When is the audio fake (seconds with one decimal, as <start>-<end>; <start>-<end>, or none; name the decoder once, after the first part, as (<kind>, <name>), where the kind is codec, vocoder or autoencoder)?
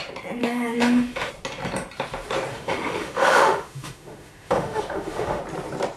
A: 0.4-1.3 (autoencoder, DAC-VAE); 2.5-5.4